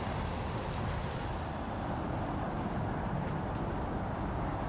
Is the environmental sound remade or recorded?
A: recorded